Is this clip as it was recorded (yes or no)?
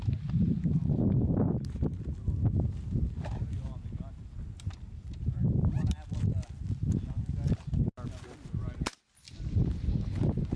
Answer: yes